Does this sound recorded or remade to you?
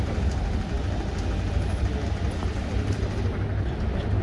recorded